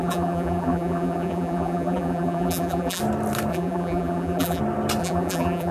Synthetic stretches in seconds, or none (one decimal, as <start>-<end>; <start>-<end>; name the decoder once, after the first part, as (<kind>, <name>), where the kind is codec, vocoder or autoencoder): 0.0-3.0 (vocoder, BigVGAN v2); 3.5-4.6; 5.0-5.7